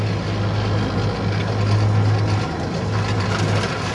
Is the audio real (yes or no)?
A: yes